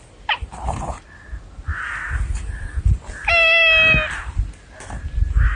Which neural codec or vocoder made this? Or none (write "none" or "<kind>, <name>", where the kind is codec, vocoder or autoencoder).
none